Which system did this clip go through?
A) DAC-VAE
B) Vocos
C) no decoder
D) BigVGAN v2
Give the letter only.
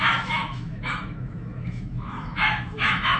A